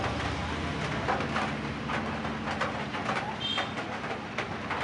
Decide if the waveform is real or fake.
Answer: real